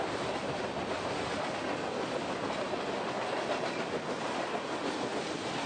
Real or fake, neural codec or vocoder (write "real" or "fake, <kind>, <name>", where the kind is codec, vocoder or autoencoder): real